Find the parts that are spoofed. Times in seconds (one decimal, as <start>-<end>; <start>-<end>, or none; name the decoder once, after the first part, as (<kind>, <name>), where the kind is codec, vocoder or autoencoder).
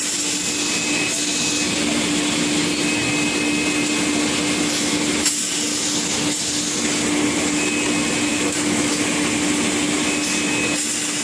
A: 8.3-8.9 (autoencoder, DAC-VAE)